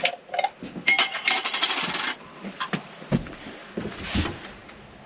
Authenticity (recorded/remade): remade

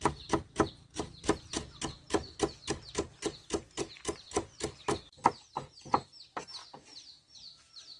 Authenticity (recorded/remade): recorded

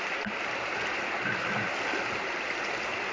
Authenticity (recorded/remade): recorded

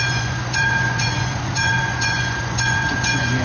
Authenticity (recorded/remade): remade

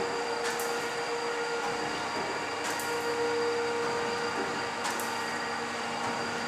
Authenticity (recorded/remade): recorded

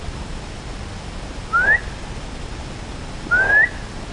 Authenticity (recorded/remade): recorded